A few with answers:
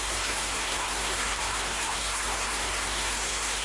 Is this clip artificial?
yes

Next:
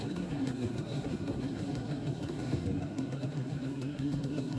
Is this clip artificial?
yes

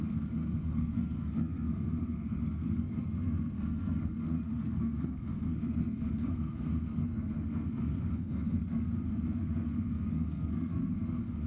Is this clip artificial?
yes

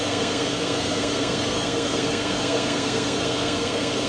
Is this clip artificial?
yes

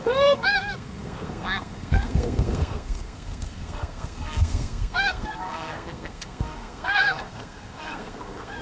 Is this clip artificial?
yes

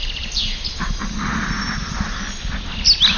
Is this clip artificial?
no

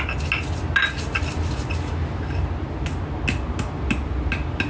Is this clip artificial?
no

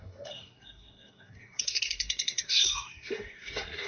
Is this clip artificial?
yes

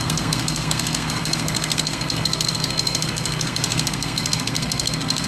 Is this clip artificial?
yes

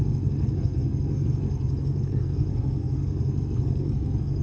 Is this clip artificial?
yes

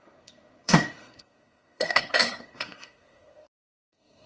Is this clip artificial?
yes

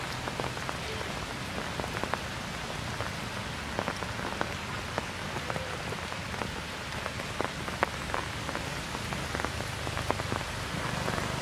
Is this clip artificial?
no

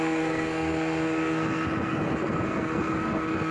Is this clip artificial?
yes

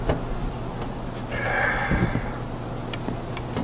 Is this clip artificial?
no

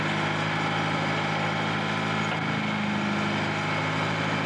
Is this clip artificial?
no